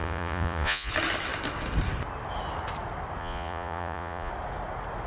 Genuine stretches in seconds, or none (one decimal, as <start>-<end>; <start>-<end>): 0.9-3.2; 4.3-5.1